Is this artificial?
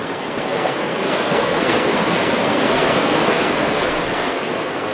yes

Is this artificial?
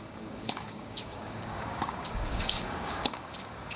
yes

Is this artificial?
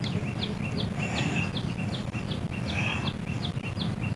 no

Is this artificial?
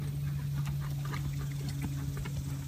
no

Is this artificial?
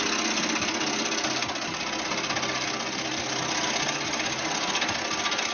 no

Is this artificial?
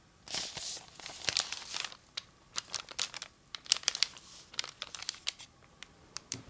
yes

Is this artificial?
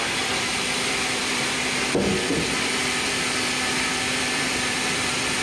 yes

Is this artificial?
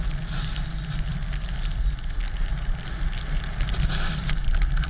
no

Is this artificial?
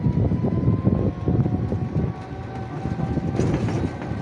no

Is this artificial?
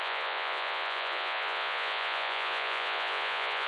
yes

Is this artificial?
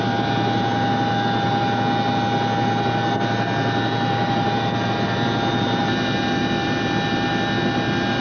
no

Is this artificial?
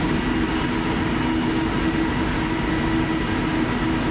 no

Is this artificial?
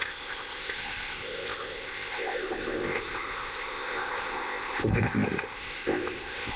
yes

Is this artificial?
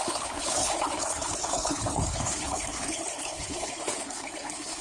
yes